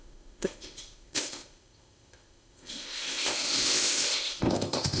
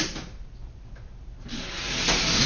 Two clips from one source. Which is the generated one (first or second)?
first